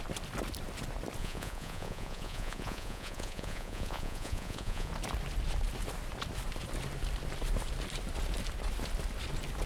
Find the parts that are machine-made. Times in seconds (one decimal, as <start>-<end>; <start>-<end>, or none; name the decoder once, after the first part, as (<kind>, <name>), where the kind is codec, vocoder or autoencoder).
1.2-4.9 (vocoder, Vocos)